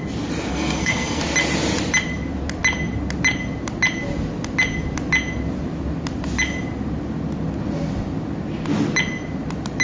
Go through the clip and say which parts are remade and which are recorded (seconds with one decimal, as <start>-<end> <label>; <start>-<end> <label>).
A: 0.0-0.5 recorded; 0.5-1.2 remade; 1.2-9.8 recorded

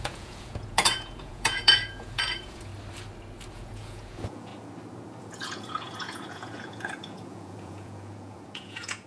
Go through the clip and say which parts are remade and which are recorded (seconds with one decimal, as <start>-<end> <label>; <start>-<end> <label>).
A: 0.0-2.7 remade; 2.7-3.5 recorded; 3.5-4.5 remade; 4.5-5.2 recorded; 5.2-9.1 remade

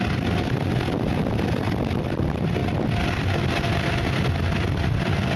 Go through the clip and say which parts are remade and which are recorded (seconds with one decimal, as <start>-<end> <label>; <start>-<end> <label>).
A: 0.0-5.4 recorded

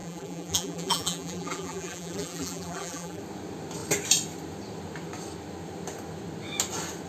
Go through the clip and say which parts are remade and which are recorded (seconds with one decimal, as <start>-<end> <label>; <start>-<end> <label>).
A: 0.0-3.2 remade; 3.2-7.1 recorded

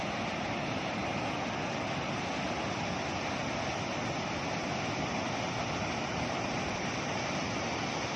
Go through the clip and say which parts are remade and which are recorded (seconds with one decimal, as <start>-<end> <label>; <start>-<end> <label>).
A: 0.0-8.2 recorded

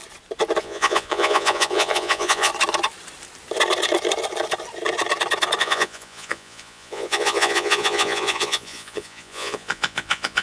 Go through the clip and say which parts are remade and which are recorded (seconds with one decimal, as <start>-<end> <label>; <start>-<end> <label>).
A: 0.0-0.6 recorded; 0.6-2.5 remade; 2.5-5.6 recorded; 5.6-10.4 remade